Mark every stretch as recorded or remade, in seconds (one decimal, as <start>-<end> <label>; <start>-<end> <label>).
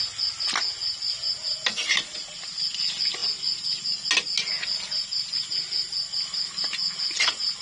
0.0-7.6 recorded